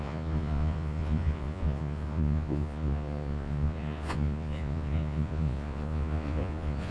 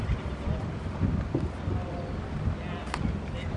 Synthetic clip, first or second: first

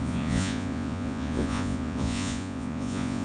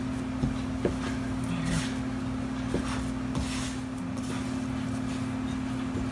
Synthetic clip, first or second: first